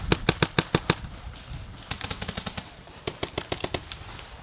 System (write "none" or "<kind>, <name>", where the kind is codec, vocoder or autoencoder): none